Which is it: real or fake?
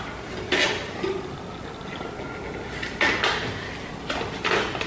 real